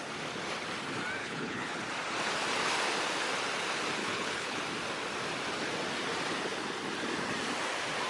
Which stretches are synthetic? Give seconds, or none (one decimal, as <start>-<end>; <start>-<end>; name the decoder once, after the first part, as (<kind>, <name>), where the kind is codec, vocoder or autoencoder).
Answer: 1.2-1.8 (codec, HILCodec); 4.0-4.6

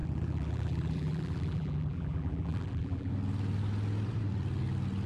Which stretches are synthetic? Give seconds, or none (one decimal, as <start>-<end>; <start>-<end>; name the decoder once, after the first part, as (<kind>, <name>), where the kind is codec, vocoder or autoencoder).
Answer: 0.0-3.1 (vocoder, BigVGAN v2)

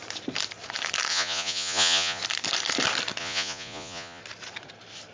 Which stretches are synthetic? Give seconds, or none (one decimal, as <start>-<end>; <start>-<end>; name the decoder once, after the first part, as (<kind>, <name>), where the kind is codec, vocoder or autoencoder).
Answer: 1.1-2.2 (vocoder, Vocos); 3.2-4.2

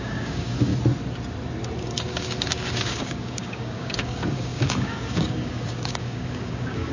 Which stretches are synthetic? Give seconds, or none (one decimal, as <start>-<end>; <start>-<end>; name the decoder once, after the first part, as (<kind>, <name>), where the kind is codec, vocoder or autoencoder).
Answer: 0.0-0.7 (codec, DAC); 1.8-6.9

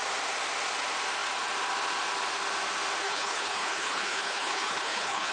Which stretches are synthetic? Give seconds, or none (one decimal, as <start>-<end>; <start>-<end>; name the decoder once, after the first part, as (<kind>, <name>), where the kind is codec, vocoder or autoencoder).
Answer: 3.0-5.3 (codec, HILCodec)

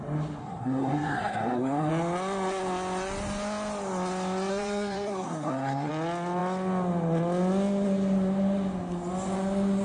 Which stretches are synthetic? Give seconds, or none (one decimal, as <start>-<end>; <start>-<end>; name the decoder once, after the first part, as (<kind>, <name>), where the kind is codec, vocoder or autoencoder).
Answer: 0.4-1.9 (codec, SNAC); 4.5-5.9

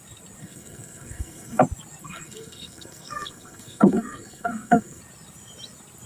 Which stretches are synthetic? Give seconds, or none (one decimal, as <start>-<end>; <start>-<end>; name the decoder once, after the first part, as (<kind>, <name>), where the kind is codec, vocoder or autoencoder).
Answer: 0.4-1.6 (codec, SNAC); 2.0-5.0